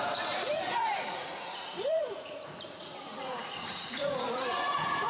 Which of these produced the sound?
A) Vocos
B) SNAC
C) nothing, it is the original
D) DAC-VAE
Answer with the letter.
A